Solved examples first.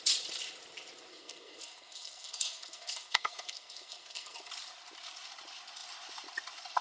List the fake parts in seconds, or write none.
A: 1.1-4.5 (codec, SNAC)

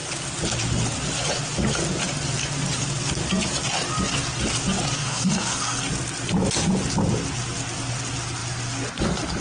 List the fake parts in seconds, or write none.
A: 5.0-5.9 (codec, SNAC)

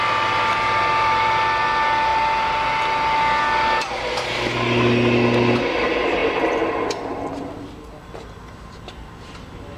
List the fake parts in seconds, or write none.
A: none

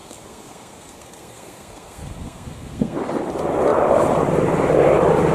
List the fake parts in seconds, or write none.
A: 0.0-3.0 (codec, SNAC)

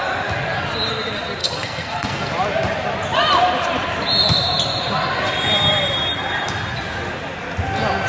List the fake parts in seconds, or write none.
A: 1.4-2.3 (codec, SNAC)